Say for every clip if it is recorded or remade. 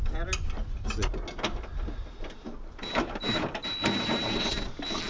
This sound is recorded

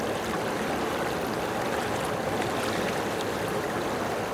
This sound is recorded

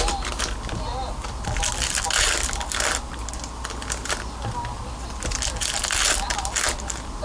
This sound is recorded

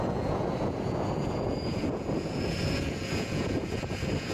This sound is remade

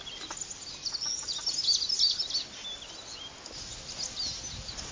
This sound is recorded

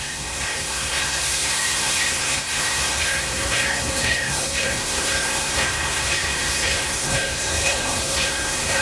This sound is remade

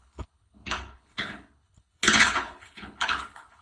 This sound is remade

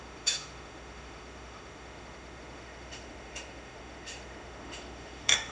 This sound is remade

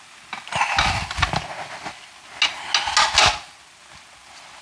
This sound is recorded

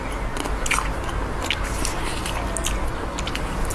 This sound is recorded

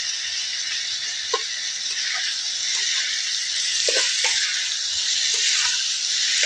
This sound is recorded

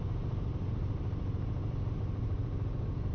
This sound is remade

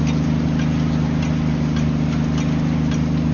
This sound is recorded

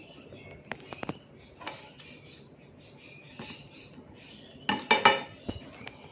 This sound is recorded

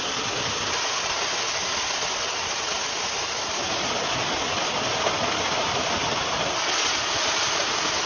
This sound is recorded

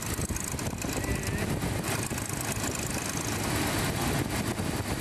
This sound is recorded